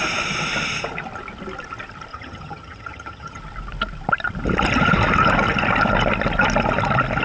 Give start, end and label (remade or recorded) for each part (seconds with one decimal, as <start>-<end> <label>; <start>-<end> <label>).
0.0-2.1 recorded; 2.1-3.4 remade; 3.4-7.2 recorded